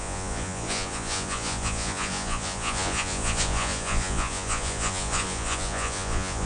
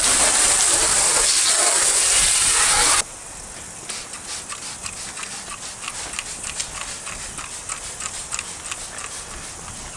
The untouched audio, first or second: second